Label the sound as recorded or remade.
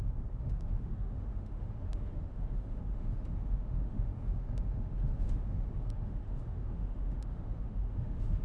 remade